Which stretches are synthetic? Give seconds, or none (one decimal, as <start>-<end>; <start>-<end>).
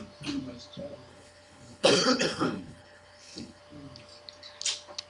1.1-3.6